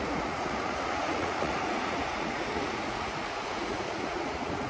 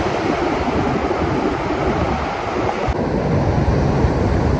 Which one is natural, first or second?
second